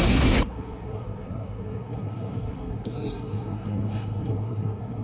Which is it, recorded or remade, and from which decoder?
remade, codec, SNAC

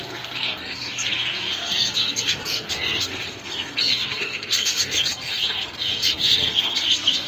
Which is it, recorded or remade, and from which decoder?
remade, codec, SNAC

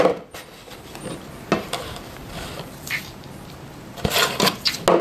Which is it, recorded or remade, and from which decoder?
recorded